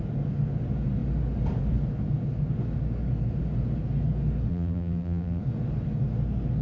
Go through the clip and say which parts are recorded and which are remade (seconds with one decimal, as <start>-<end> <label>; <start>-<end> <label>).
0.0-4.5 recorded; 4.5-5.4 remade; 5.4-6.6 recorded